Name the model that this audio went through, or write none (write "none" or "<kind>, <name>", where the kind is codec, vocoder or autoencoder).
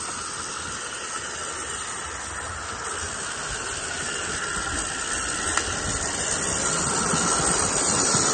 none